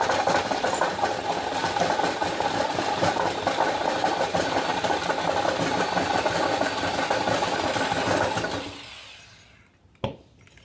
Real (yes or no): yes